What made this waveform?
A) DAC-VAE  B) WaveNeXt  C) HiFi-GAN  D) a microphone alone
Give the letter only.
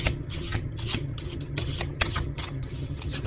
C